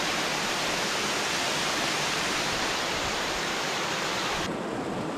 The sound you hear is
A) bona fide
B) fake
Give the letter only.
A